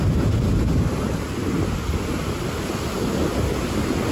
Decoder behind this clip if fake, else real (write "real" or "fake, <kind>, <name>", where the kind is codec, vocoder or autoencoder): real